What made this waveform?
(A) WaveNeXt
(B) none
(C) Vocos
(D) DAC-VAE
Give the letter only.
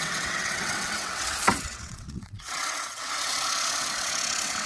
A